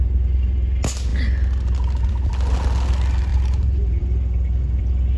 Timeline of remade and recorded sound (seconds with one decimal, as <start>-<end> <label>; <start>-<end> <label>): 0.0-3.3 recorded; 3.3-4.8 remade; 4.8-5.2 recorded